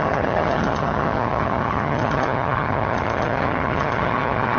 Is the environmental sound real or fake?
fake